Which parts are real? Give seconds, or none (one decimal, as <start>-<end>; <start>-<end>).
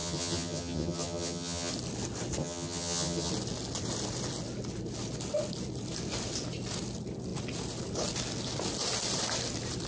1.7-2.4; 3.3-9.9